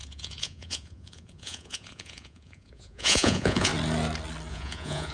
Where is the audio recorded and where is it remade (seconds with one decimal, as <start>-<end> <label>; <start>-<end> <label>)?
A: 0.0-3.7 remade; 3.7-4.5 recorded; 4.5-5.1 remade